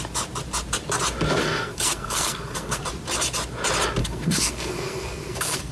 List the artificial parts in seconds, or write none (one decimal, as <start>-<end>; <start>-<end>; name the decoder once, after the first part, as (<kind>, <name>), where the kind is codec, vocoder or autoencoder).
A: 1.4-2.8 (codec, SNAC); 4.0-5.7